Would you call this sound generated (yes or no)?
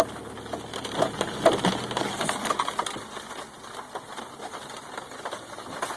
no